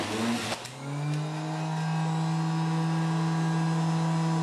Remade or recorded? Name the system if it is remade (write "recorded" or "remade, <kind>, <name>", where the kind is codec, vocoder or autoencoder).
recorded